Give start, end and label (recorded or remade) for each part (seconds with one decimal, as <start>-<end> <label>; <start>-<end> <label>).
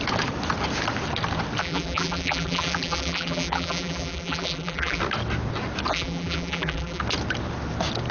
0.0-1.6 recorded; 1.6-5.0 remade; 5.0-5.9 recorded; 5.9-7.0 remade; 7.0-8.1 recorded